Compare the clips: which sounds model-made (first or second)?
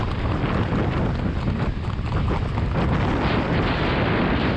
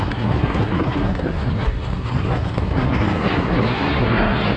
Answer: second